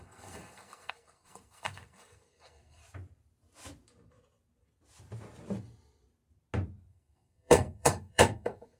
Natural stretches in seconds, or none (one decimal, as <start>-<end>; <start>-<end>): 2.8-6.9